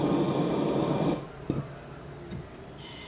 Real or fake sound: real